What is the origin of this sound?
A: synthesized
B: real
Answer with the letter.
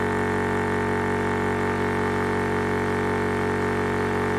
B